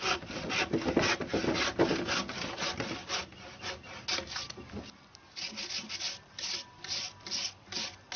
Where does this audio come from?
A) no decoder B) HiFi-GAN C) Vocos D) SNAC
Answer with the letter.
A